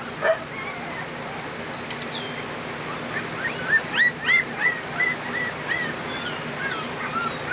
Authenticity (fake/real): real